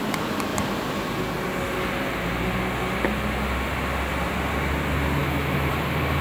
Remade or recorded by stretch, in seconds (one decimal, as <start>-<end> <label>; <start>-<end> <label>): 0.0-5.2 recorded; 5.2-5.7 remade; 5.7-6.2 recorded